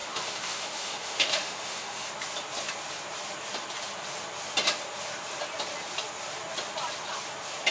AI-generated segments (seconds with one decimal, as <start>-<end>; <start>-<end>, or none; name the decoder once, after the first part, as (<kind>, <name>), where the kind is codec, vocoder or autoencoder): 0.0-2.1 (autoencoder, DAC-VAE)